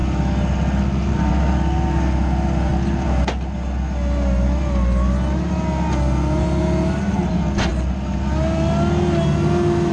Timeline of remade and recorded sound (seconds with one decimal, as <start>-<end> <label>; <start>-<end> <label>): 0.0-9.9 recorded